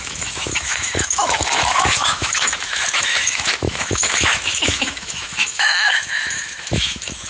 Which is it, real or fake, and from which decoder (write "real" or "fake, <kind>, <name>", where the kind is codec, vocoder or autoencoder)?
fake, autoencoder, DAC-VAE